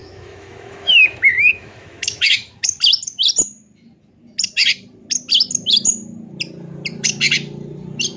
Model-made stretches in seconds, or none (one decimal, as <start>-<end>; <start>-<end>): 0.0-2.7

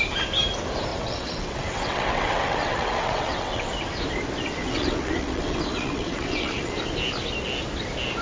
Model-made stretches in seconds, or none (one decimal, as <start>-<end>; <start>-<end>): 0.9-3.7; 4.6-6.7

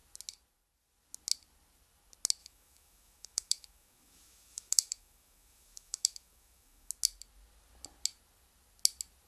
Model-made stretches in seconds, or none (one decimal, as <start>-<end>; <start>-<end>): 2.4-6.9

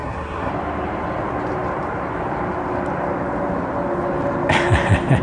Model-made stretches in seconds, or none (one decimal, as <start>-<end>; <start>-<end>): 0.0-0.5

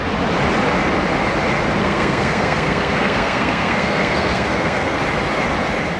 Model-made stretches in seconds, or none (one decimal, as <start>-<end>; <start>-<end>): 1.8-5.0